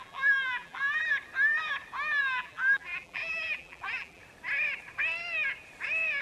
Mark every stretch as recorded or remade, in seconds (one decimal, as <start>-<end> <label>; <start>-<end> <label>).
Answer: 0.0-1.0 remade; 1.0-2.2 recorded; 2.2-4.2 remade; 4.2-6.2 recorded